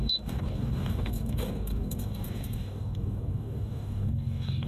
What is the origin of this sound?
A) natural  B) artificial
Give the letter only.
B